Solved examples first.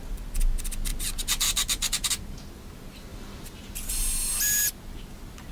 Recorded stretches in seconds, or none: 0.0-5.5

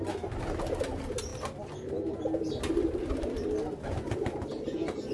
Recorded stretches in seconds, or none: 0.0-5.1

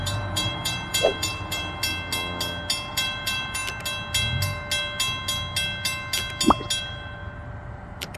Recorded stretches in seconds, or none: 1.8-2.9; 3.6-6.8; 7.2-7.7

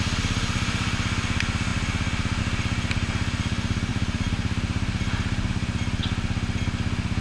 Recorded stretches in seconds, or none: 0.0-3.9; 5.5-7.2